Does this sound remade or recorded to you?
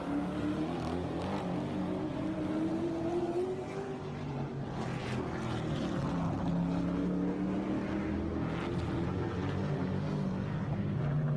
recorded